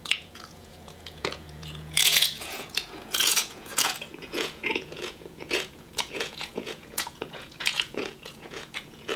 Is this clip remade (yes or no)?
yes